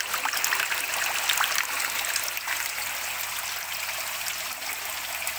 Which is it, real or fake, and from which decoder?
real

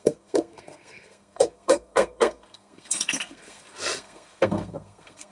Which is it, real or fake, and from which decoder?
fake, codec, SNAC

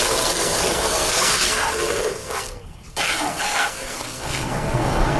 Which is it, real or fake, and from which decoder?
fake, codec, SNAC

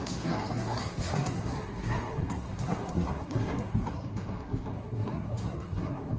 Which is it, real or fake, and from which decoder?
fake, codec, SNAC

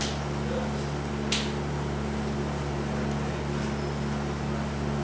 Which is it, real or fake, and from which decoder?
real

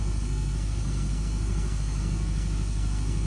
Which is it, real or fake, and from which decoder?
fake, codec, SNAC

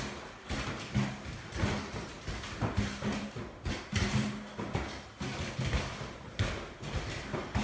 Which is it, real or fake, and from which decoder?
real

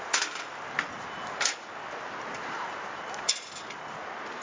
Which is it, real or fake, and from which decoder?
real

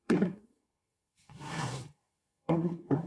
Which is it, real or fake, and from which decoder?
fake, codec, SNAC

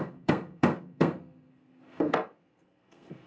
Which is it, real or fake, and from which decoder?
fake, codec, SNAC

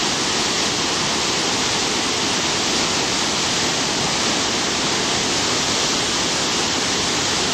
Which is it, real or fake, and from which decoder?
real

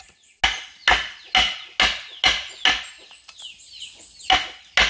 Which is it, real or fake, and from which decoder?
real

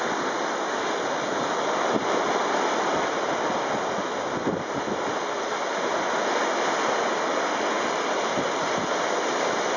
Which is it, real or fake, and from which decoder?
real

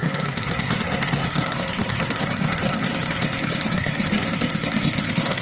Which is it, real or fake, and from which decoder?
fake, codec, SNAC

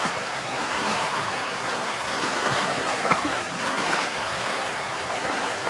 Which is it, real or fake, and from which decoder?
fake, codec, SNAC